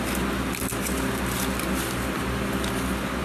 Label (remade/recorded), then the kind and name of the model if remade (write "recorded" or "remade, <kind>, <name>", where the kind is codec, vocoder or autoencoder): recorded